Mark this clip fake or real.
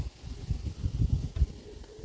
real